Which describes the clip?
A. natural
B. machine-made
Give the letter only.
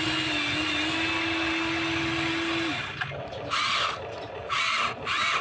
A